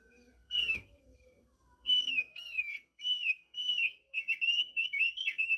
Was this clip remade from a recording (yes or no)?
yes